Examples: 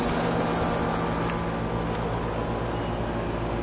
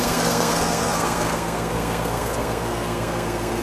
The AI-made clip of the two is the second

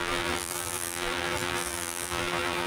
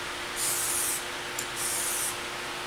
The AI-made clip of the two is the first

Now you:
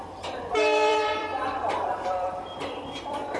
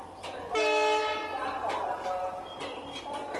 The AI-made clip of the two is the first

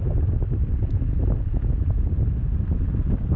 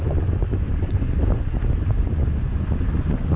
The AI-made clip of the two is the second